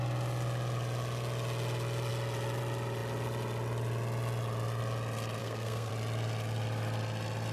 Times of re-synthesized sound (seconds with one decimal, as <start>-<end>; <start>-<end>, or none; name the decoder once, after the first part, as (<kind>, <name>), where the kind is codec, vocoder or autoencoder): 5.4-5.9 (codec, SNAC)